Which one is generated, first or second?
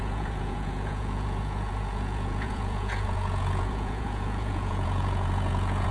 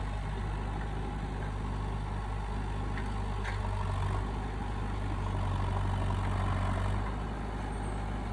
first